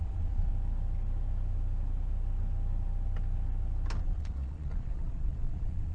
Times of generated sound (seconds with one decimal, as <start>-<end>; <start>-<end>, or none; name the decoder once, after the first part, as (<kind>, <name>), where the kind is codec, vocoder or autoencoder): 0.0-0.5 (vocoder, Vocos); 4.0-5.9